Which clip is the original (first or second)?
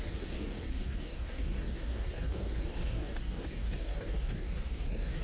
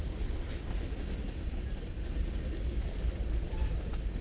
second